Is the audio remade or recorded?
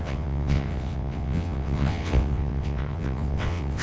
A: remade